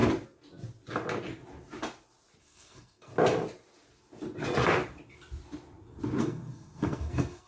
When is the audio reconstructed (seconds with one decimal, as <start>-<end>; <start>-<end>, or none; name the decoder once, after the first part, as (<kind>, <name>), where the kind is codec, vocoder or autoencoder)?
2.4-3.1 (codec, SNAC); 6.2-7.5